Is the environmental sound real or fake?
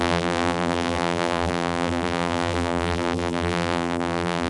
fake